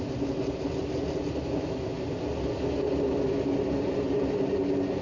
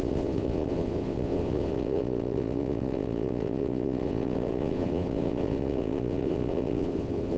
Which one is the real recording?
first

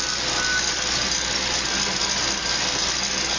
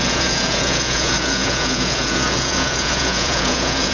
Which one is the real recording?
first